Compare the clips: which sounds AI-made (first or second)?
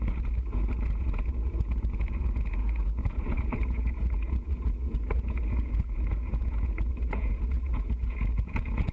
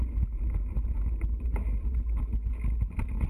first